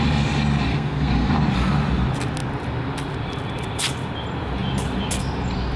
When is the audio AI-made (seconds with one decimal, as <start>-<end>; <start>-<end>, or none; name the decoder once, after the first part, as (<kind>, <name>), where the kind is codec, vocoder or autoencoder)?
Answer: 0.7-1.3 (codec, SNAC)